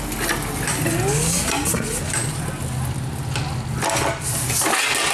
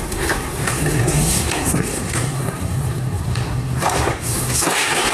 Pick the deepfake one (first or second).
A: second